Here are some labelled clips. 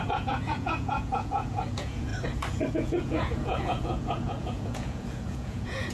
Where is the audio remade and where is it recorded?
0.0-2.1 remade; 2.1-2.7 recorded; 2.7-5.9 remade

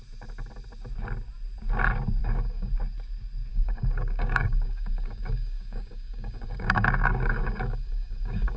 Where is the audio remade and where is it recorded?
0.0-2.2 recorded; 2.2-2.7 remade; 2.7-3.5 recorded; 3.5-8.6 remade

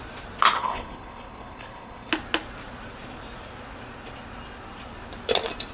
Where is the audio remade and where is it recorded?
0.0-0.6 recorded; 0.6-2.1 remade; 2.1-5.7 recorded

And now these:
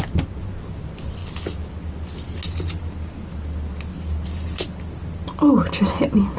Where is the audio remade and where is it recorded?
0.0-6.4 recorded